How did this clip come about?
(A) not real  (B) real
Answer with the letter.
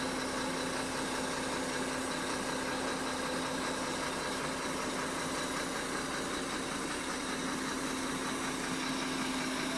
B